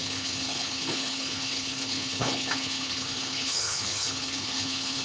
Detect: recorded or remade remade